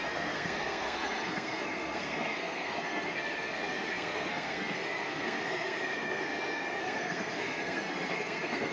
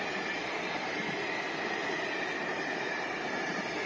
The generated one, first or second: first